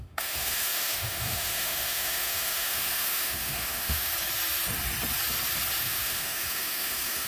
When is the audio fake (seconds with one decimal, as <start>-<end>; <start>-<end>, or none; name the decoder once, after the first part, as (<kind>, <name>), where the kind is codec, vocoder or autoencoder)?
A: 0.0-4.1 (autoencoder, DAC-VAE); 5.8-7.3